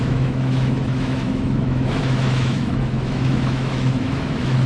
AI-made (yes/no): yes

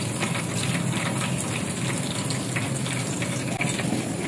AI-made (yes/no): no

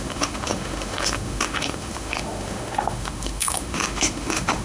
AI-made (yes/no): yes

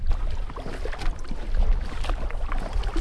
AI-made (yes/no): no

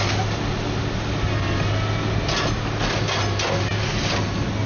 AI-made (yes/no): no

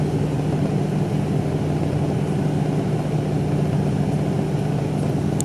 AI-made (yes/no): no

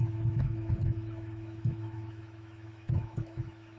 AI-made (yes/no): yes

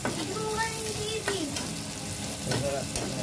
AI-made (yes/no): no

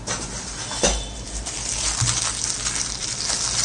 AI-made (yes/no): no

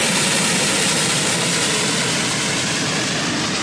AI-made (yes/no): no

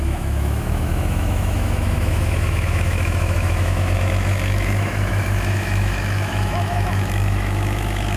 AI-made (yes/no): yes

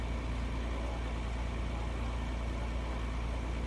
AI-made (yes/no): no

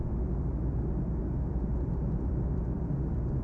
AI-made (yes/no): no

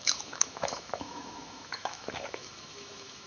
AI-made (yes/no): yes